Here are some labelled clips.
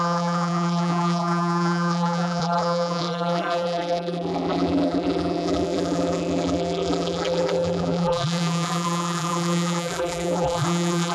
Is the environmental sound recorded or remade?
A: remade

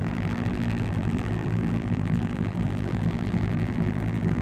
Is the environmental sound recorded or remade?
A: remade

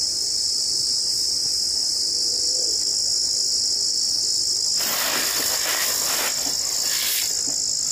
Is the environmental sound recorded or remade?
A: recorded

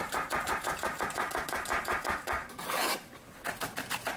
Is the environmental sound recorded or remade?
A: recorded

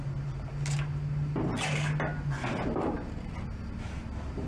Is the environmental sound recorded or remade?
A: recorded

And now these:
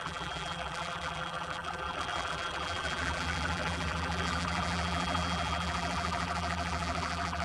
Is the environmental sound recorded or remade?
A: remade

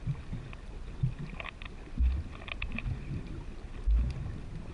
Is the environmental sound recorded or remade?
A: recorded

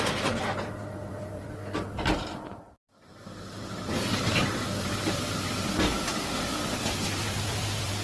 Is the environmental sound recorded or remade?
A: remade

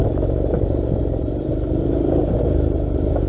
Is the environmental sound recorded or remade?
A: remade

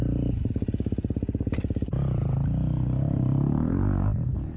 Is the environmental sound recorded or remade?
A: remade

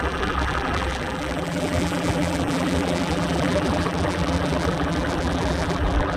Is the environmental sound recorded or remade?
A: remade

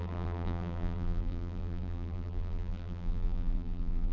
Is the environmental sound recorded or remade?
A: remade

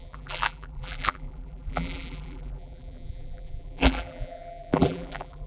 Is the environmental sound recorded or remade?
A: remade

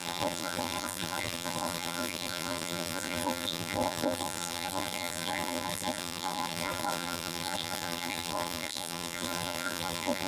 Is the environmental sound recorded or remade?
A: remade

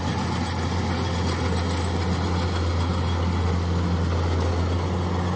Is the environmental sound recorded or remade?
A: recorded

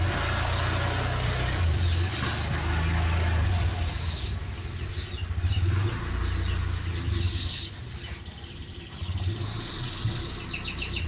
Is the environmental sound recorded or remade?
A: recorded